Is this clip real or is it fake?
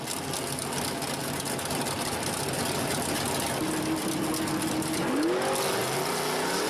real